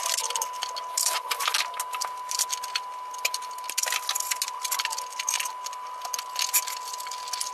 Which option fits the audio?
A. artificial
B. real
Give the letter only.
B